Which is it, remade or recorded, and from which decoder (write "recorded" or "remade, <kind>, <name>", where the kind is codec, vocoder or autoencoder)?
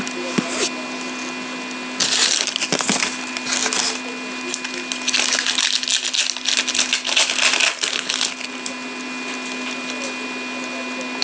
recorded